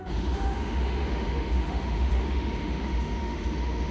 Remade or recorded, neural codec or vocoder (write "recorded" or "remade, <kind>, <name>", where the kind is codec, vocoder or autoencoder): remade, autoencoder, DAC-VAE